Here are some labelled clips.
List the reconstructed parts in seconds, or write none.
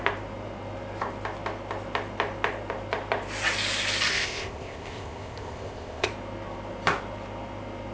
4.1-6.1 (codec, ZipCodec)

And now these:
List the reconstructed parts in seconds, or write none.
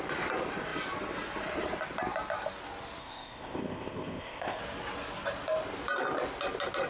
3.0-4.6 (codec, ZipCodec)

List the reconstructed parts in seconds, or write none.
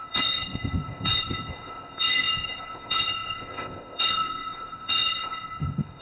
0.0-6.0 (codec, ZipCodec)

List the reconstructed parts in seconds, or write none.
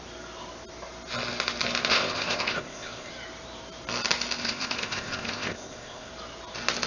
1.9-3.1 (codec, ZipCodec); 4.4-6.1